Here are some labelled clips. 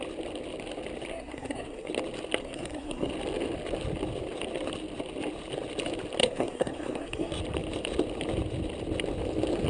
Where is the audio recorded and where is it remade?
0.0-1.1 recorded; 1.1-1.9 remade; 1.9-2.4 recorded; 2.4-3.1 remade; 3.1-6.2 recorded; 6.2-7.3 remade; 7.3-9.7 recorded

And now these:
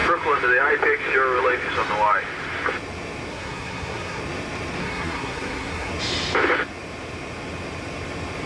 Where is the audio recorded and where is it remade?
0.0-3.3 recorded; 3.3-4.2 remade; 4.2-4.8 recorded; 4.8-5.9 remade; 5.9-8.5 recorded

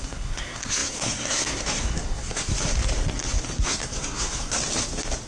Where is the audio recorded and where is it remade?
0.0-2.5 remade; 2.5-3.6 recorded; 3.6-4.6 remade; 4.6-5.3 recorded

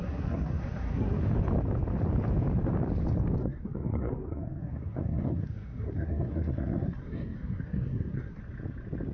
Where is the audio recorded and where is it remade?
0.0-1.2 remade; 1.2-3.4 recorded; 3.4-8.4 remade; 8.4-9.1 recorded

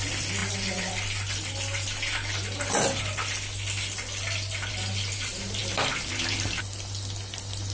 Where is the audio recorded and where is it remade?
0.0-7.7 recorded

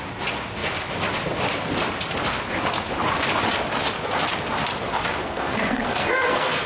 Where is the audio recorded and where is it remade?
0.0-5.2 recorded; 5.2-6.7 remade

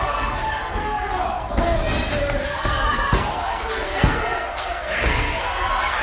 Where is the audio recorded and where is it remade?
0.0-1.8 remade; 1.8-2.4 recorded; 2.4-6.0 remade

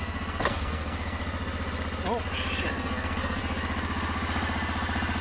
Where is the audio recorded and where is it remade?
0.0-1.2 remade; 1.2-2.7 recorded; 2.7-3.4 remade; 3.4-5.2 recorded